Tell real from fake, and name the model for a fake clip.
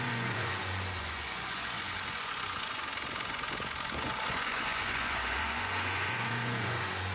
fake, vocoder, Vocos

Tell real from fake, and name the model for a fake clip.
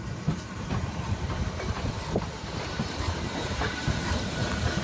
fake, vocoder, BigVGAN v2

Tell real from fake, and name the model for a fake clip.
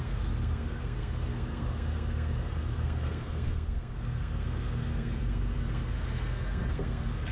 fake, codec, SNAC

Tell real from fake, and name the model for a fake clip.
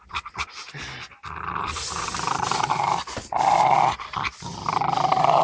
real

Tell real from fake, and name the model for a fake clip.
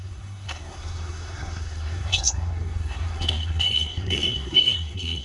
fake, codec, SNAC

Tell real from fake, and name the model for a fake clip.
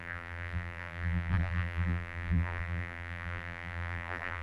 fake, vocoder, BigVGAN v2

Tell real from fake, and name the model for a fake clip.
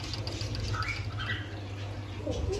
real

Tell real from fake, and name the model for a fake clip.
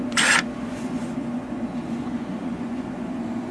fake, vocoder, Vocos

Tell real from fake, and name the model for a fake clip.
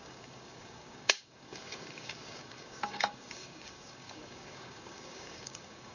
fake, codec, DAC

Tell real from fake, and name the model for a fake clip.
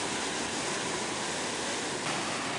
real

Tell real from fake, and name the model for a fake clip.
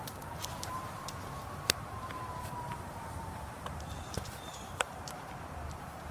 fake, vocoder, BigVGAN v2